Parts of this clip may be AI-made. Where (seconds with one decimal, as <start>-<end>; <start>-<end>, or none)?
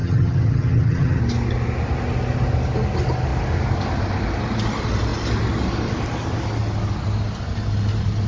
0.0-1.2